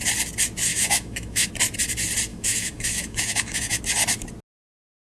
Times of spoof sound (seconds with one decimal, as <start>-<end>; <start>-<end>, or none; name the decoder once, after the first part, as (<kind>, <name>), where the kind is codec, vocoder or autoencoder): 0.7-1.5 (autoencoder, DAC-VAE); 2.3-3.8